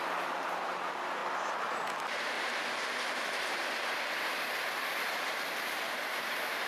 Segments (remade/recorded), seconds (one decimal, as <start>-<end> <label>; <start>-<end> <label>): 0.0-1.2 remade; 1.2-2.2 recorded; 2.2-3.6 remade; 3.6-5.1 recorded; 5.1-6.7 remade